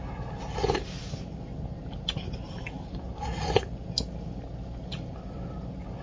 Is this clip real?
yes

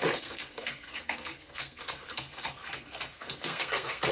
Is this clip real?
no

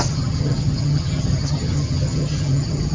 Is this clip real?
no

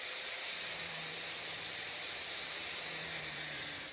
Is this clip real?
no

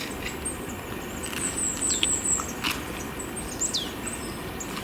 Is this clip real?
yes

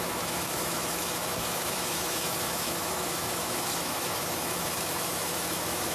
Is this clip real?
no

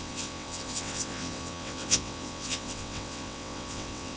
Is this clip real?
no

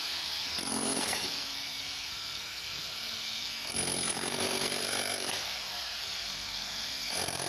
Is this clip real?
no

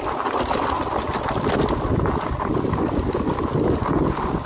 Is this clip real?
yes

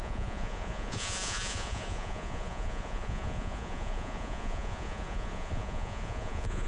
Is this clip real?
no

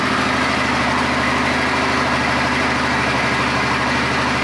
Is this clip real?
yes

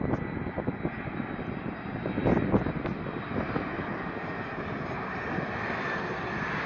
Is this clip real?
yes